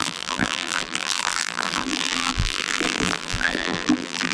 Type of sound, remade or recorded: remade